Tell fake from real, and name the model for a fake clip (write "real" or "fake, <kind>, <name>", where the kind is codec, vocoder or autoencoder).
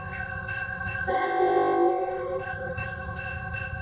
fake, codec, ZipCodec